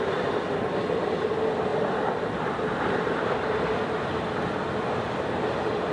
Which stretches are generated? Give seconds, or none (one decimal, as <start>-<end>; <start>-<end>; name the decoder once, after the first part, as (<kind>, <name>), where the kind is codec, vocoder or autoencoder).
none